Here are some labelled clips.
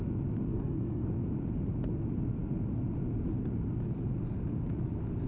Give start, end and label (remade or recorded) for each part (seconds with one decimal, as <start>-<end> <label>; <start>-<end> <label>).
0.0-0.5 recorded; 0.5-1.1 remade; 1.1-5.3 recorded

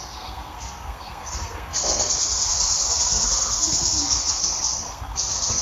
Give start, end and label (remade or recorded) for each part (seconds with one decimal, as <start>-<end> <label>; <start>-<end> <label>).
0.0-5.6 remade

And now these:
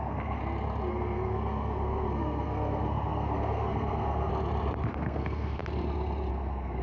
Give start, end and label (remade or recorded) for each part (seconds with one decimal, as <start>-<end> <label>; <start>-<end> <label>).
0.0-0.4 remade; 0.4-0.9 recorded; 0.9-4.3 remade; 4.3-4.9 recorded; 4.9-5.6 remade; 5.6-6.3 recorded; 6.3-6.8 remade